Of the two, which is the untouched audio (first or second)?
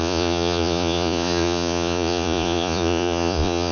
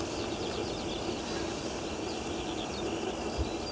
second